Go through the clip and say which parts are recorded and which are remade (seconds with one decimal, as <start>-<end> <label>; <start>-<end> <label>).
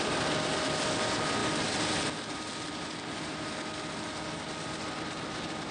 0.0-5.7 recorded